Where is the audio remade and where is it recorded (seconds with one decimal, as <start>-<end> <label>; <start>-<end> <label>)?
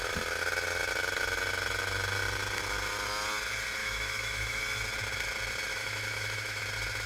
0.0-3.8 recorded; 3.8-4.6 remade; 4.6-5.7 recorded; 5.7-6.6 remade; 6.6-7.1 recorded